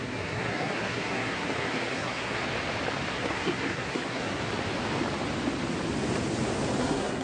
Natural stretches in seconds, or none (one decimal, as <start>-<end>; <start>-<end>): 2.4-3.1; 4.4-6.8